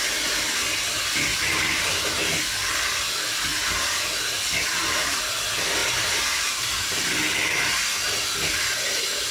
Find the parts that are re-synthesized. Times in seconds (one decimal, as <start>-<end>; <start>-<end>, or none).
1.3-2.4; 5.8-6.9